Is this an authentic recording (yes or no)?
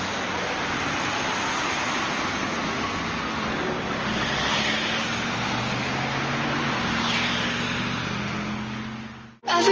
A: yes